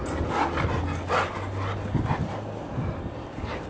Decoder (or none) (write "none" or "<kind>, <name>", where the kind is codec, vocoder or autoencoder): none